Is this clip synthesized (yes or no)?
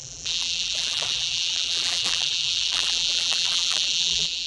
yes